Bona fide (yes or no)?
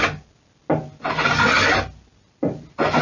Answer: yes